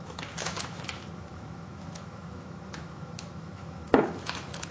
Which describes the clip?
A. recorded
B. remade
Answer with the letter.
B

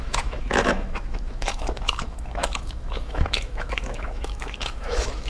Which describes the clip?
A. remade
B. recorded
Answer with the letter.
A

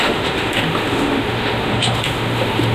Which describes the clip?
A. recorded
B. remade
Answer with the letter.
B